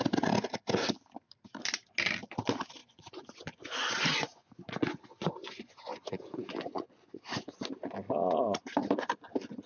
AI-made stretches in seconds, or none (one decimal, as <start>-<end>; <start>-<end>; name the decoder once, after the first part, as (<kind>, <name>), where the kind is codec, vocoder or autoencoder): 2.8-7.5 (vocoder, Vocos)